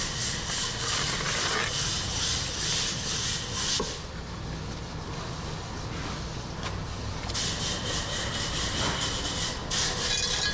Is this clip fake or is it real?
real